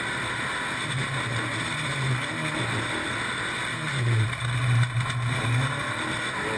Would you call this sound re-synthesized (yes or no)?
no